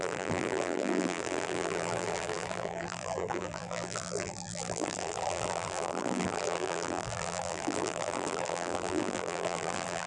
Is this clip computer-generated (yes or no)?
yes